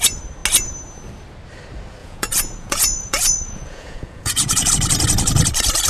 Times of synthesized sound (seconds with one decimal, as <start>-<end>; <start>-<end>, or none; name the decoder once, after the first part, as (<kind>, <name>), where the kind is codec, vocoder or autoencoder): 2.0-4.7 (vocoder, Vocos)